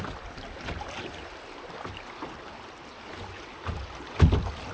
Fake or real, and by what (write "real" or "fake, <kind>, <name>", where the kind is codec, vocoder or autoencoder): real